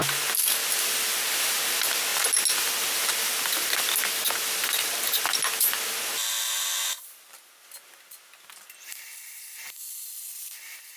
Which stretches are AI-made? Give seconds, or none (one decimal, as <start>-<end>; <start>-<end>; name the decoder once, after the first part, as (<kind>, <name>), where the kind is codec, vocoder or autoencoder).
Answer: none